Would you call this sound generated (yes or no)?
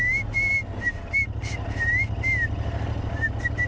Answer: no